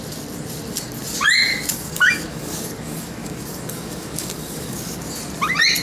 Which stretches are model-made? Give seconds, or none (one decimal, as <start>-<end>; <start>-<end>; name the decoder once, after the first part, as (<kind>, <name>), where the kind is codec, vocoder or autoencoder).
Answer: 1.5-5.0 (codec, DAC)